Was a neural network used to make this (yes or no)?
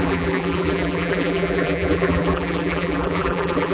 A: yes